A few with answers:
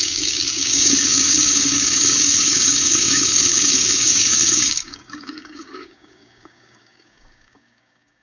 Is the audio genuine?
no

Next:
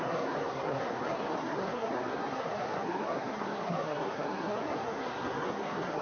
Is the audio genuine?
no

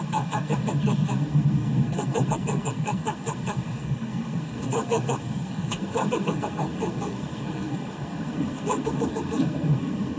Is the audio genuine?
no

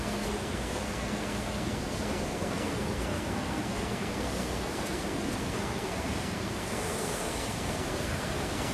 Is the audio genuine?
no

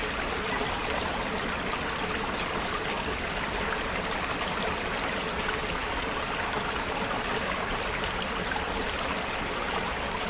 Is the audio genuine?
yes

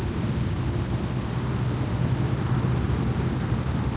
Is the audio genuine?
yes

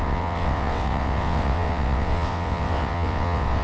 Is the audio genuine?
no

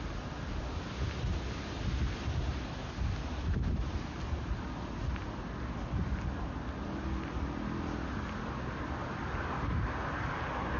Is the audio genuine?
yes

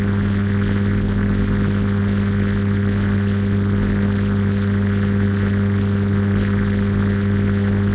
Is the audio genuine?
yes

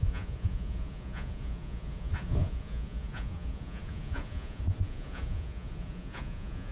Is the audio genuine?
no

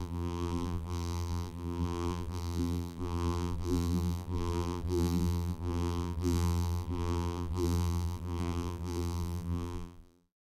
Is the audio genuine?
no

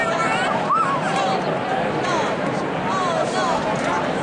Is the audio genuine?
yes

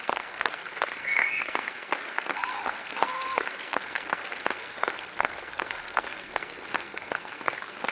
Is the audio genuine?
no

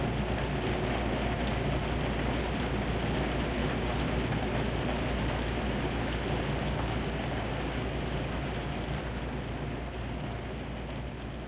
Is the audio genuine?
yes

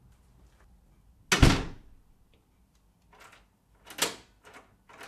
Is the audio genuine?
yes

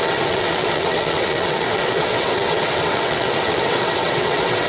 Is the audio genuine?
no